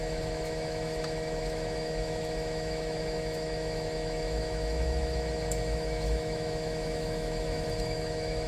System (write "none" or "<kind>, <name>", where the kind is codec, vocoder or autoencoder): autoencoder, DAC-VAE